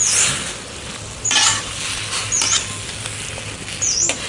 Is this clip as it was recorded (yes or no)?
yes